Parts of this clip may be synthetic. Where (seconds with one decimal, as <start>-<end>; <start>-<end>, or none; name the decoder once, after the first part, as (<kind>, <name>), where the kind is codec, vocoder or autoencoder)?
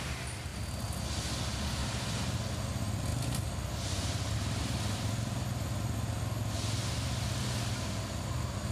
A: none